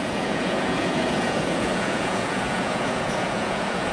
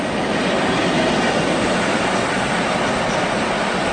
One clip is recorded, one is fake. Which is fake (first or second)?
first